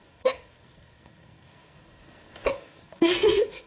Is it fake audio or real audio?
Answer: fake